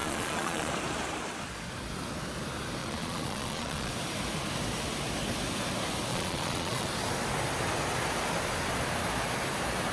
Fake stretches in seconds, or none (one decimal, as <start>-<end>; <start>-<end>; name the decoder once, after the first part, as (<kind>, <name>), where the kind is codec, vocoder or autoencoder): 0.0-0.7 (vocoder, Vocos); 2.8-3.9; 6.1-6.9